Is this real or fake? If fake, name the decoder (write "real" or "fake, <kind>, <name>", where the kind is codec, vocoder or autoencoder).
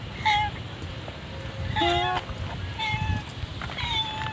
real